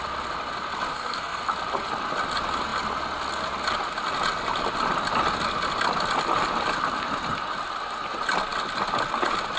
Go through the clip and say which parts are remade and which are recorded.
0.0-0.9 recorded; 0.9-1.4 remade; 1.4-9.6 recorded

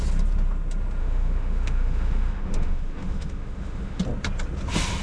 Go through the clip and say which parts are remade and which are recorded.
0.0-1.0 recorded; 1.0-4.0 remade; 4.0-5.0 recorded

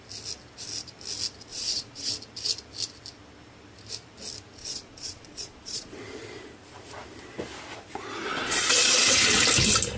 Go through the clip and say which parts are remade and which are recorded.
0.0-1.5 recorded; 1.5-2.1 remade; 2.1-4.6 recorded; 4.6-6.0 remade; 6.0-8.2 recorded; 8.2-9.4 remade; 9.4-10.0 recorded

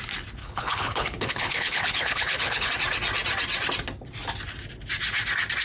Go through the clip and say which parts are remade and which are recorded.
0.0-0.4 recorded; 0.4-2.7 remade; 2.7-5.6 recorded

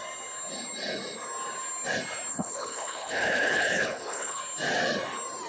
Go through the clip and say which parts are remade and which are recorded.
0.0-2.3 recorded; 2.3-4.4 remade; 4.4-5.5 recorded

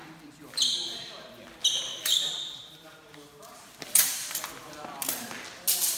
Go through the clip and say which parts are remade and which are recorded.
0.0-2.1 recorded; 2.1-4.5 remade; 4.5-6.0 recorded